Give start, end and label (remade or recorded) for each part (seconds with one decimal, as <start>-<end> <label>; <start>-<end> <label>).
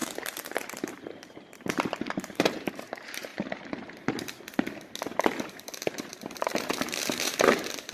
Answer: 0.0-3.3 remade; 3.3-5.5 recorded; 5.5-7.9 remade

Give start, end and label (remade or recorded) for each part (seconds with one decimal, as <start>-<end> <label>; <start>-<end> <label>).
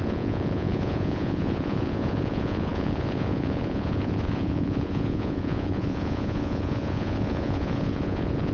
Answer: 0.0-8.5 remade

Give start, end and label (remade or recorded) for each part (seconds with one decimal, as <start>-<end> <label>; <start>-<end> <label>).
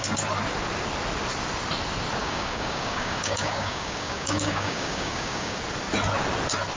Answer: 0.0-2.2 recorded; 2.2-5.6 remade; 5.6-6.8 recorded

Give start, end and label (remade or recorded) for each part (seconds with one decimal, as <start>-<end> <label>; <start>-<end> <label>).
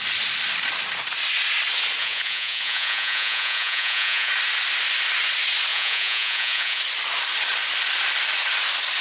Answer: 0.0-2.0 recorded; 2.0-4.3 remade; 4.3-5.7 recorded; 5.7-6.8 remade; 6.8-9.0 recorded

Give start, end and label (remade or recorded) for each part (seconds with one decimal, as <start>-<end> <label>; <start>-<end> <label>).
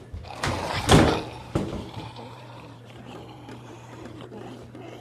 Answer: 0.0-1.4 recorded; 1.4-4.4 remade; 4.4-5.0 recorded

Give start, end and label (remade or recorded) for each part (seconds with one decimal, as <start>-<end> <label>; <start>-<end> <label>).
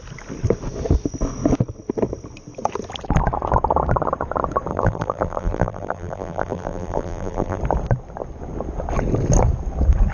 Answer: 0.0-4.7 recorded; 4.7-7.6 remade; 7.6-10.1 recorded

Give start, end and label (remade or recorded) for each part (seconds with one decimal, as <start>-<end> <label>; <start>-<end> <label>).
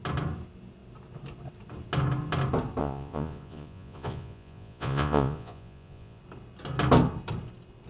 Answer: 0.0-2.8 recorded; 2.8-6.2 remade; 6.2-7.9 recorded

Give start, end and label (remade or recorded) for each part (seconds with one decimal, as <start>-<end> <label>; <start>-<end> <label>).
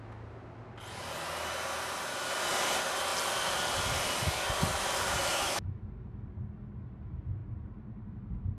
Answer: 0.0-5.3 recorded; 5.3-5.8 remade; 5.8-8.6 recorded